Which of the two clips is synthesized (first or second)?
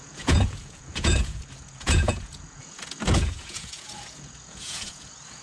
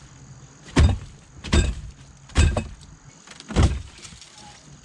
first